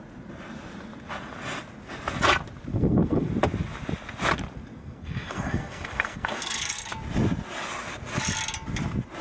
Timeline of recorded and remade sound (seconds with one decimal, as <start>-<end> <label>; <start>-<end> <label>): 0.0-2.7 recorded; 2.7-3.3 remade; 3.3-4.8 recorded; 4.8-6.9 remade; 6.9-9.2 recorded